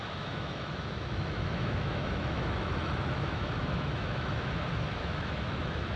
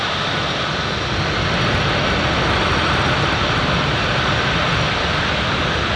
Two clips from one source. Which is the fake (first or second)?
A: first